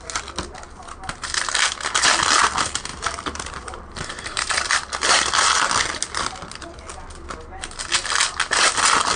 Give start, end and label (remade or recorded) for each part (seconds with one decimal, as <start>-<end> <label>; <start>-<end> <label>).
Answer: 0.0-2.9 recorded; 2.9-4.7 remade; 4.7-9.2 recorded